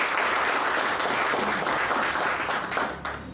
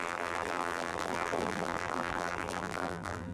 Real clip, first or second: first